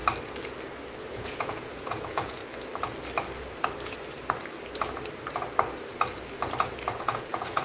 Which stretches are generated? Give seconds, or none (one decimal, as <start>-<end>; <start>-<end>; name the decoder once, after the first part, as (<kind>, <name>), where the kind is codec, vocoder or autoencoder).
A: 1.1-2.4 (vocoder, Vocos); 7.0-7.6